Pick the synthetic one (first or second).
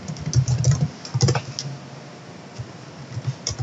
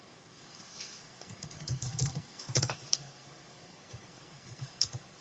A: second